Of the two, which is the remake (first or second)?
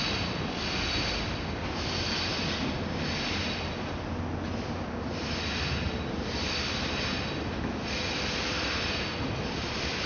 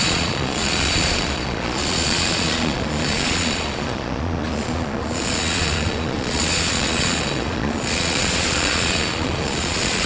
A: second